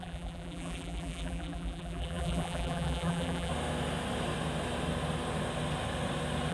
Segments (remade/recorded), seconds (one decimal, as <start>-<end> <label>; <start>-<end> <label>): 0.0-3.5 remade; 3.5-6.5 recorded